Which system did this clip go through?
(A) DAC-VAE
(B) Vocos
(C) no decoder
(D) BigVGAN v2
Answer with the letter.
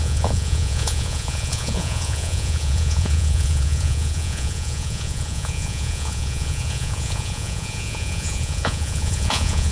B